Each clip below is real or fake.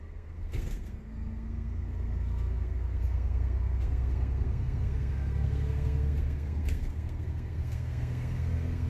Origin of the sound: fake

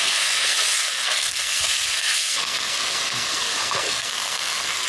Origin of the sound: fake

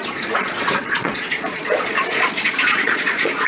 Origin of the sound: fake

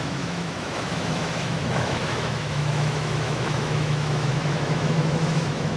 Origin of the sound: fake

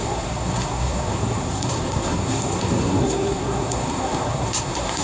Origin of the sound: fake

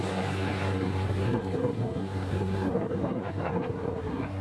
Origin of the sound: fake